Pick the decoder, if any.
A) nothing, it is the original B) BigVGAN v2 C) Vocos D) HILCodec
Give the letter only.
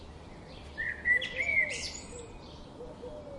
A